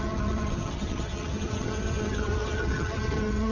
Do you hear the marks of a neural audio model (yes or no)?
yes